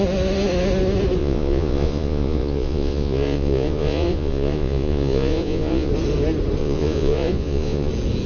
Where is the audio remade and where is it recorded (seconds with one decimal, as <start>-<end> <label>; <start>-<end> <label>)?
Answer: 0.0-1.2 recorded; 1.2-5.9 remade; 5.9-6.6 recorded; 6.6-7.9 remade; 7.9-8.3 recorded